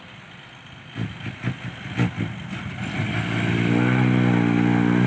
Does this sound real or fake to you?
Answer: real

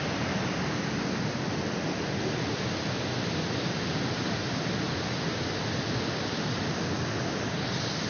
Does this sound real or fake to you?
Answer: real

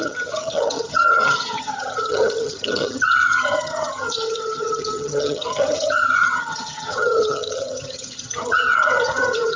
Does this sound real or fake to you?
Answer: fake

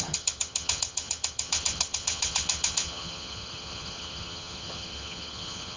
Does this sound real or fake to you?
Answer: fake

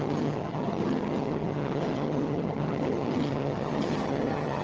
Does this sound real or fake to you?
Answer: fake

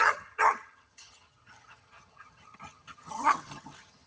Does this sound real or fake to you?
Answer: fake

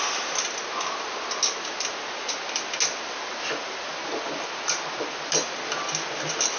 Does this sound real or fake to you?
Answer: real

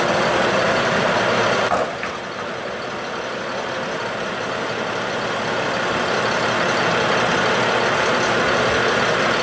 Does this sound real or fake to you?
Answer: real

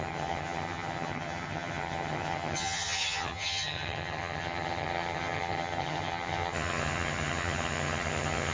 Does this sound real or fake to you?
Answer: fake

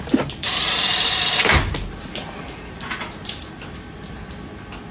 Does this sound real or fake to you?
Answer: real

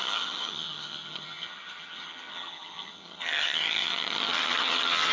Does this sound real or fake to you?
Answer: fake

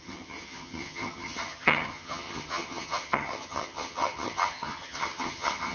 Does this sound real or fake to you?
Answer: fake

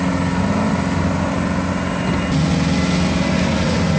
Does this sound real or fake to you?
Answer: real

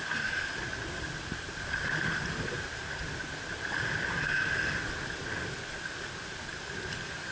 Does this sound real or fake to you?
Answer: real